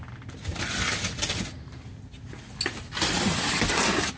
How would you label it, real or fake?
real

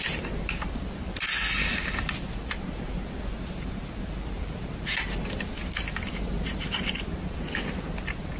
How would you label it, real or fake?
real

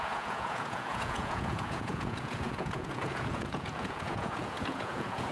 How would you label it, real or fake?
fake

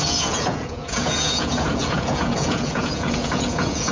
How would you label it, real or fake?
fake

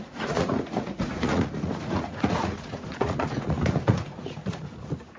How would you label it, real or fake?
fake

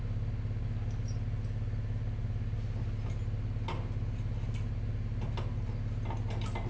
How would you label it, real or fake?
real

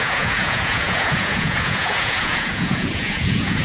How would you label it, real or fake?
fake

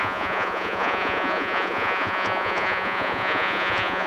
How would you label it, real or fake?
fake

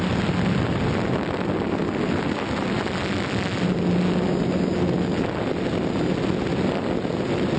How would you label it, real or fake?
real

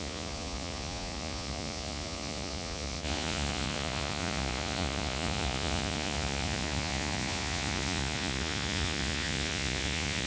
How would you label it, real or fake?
fake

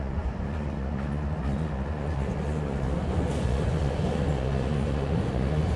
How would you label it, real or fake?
fake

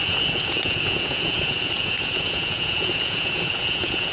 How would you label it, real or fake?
fake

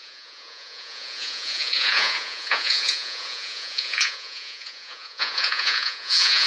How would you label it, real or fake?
fake